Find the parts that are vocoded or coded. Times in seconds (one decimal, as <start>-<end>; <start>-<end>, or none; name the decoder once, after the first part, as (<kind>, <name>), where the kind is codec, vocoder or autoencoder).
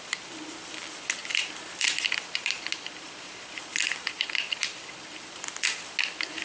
1.2-2.2 (vocoder, BigVGAN v2); 3.7-5.3